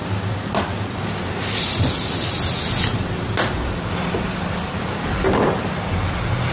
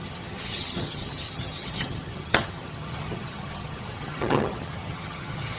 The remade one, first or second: second